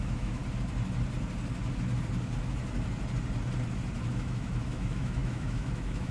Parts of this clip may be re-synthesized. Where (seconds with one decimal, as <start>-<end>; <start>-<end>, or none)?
0.0-0.4; 4.1-6.1